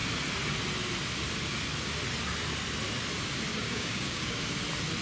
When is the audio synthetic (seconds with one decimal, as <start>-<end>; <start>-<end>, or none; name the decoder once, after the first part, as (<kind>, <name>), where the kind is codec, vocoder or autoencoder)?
3.5-4.4 (codec, DAC)